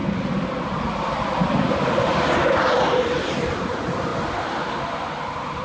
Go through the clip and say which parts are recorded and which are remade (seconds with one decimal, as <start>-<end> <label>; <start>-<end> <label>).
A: 0.0-4.1 remade; 4.1-4.7 recorded; 4.7-5.6 remade